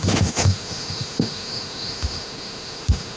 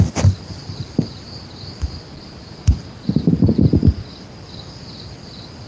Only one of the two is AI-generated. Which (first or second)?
first